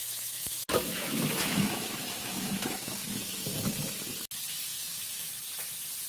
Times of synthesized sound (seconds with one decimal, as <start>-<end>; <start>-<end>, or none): 0.0-3.7; 4.7-5.3